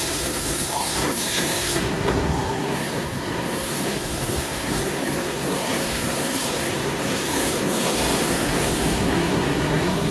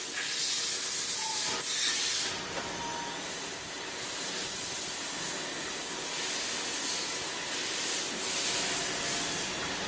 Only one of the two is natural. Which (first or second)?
second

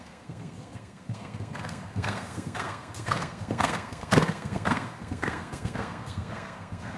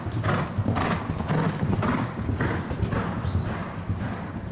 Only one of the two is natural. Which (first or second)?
second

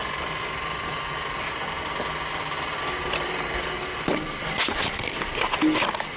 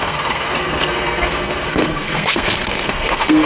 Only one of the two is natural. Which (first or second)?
first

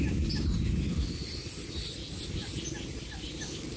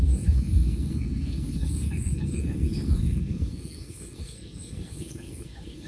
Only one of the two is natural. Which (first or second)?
first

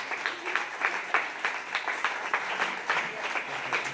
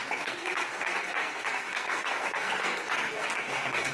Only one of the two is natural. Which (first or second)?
first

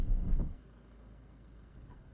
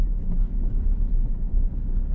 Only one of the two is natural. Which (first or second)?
second